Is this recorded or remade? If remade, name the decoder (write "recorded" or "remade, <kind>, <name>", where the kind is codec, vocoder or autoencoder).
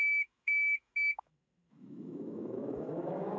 remade, autoencoder, DAC-VAE